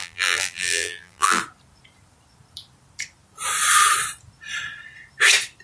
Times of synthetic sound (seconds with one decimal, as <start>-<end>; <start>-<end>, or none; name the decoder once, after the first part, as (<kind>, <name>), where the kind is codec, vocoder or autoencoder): 0.0-1.4 (vocoder, BigVGAN v2)